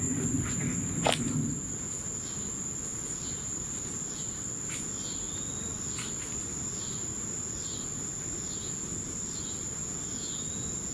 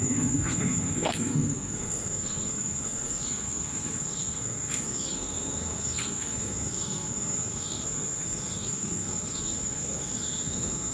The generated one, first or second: second